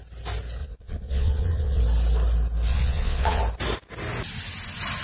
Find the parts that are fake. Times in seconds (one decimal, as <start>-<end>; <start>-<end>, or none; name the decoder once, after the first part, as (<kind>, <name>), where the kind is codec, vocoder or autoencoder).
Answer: 0.6-1.8 (vocoder, Vocos); 2.7-3.4